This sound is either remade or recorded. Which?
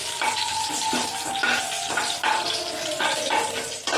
recorded